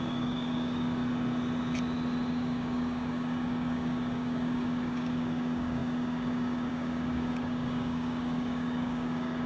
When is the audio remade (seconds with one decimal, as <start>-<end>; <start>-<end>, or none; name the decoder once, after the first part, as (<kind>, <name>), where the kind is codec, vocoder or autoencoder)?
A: 0.0-1.0 (codec, DAC); 2.3-9.5